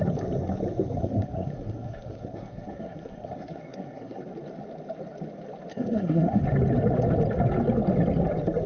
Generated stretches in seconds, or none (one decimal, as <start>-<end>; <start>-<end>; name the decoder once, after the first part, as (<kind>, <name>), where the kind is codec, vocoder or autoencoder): 1.0-4.2 (codec, SNAC); 5.7-6.4

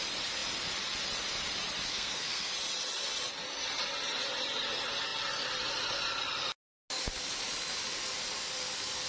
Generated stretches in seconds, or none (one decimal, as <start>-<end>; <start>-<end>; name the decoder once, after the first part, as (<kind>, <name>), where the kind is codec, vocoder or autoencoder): 1.9-2.5 (codec, SNAC)

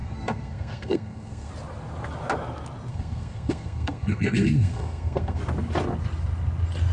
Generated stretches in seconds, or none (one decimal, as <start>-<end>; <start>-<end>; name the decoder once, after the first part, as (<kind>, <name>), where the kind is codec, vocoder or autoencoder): 0.0-1.5 (codec, SNAC); 2.9-5.4